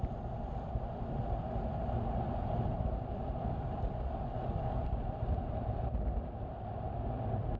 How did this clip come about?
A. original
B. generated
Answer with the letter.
A